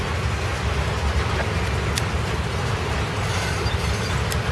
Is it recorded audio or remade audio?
recorded